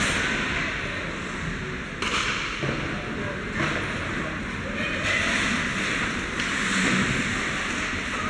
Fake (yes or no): no